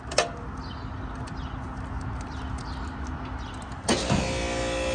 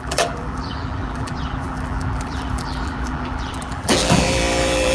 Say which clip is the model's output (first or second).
second